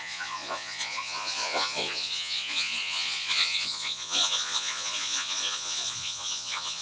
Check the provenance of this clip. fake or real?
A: fake